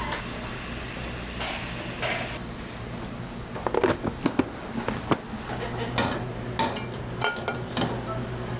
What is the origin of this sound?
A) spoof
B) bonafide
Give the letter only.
B